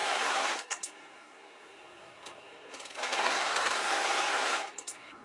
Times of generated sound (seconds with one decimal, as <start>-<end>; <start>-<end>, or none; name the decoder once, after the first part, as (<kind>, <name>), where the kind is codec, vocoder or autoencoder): 0.0-5.2 (codec, SNAC)